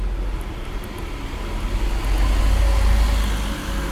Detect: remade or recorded recorded